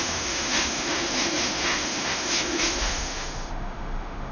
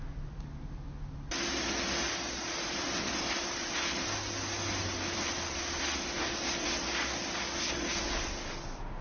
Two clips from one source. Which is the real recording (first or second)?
second